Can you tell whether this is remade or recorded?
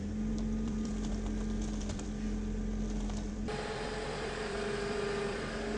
remade